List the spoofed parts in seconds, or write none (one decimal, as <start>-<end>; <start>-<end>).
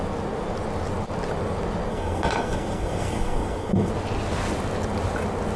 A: 1.9-3.9